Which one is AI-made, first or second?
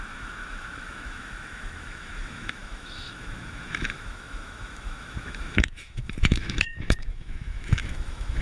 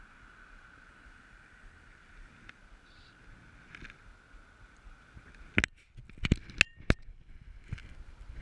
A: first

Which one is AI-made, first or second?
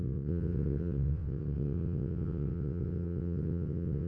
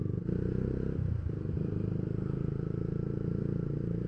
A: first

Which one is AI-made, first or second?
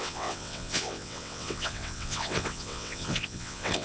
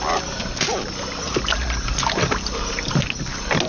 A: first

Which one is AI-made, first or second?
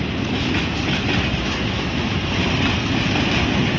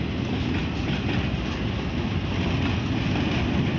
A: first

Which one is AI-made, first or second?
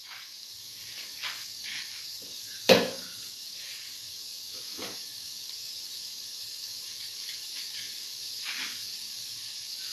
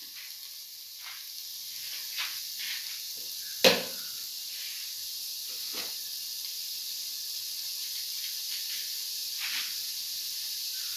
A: first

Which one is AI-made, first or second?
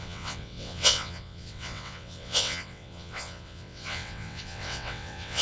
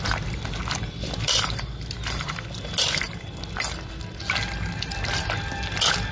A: first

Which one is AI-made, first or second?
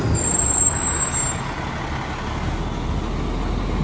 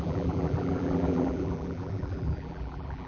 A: second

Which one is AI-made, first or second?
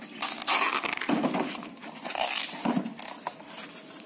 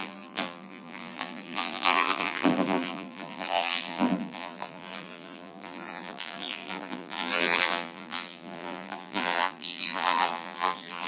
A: second